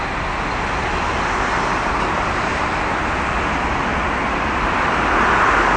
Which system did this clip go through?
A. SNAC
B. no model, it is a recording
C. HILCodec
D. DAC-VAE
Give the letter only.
B